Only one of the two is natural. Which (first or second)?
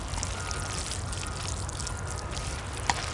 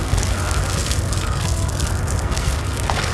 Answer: first